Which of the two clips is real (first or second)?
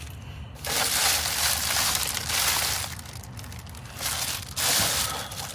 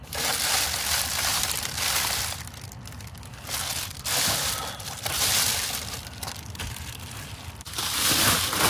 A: first